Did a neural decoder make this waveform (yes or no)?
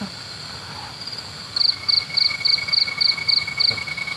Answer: no